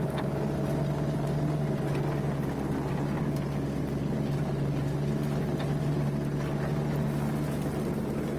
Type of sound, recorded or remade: recorded